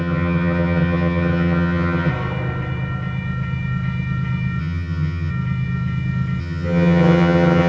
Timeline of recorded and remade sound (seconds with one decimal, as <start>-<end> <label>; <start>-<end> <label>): 0.0-2.1 remade; 2.1-4.6 recorded; 4.6-5.3 remade; 5.3-6.4 recorded; 6.4-7.7 remade

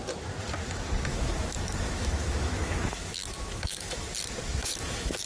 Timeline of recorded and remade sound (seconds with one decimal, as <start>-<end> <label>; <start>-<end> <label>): 0.0-1.1 recorded; 1.1-4.1 remade; 4.1-4.6 recorded; 4.6-5.3 remade

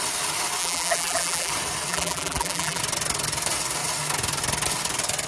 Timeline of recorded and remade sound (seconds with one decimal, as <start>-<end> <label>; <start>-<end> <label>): 0.0-0.6 recorded; 0.6-1.5 remade; 1.5-1.9 recorded; 1.9-2.8 remade; 2.8-5.3 recorded

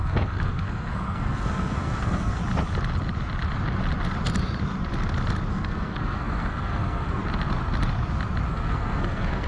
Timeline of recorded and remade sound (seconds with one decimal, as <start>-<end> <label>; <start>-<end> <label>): 0.0-2.4 remade; 2.4-5.5 recorded; 5.5-7.2 remade; 7.2-8.5 recorded; 8.5-9.5 remade

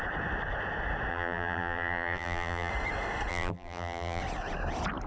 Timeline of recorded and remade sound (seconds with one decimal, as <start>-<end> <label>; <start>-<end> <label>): 0.0-1.1 recorded; 1.1-2.7 remade; 2.7-3.3 recorded; 3.3-4.2 remade; 4.2-5.1 recorded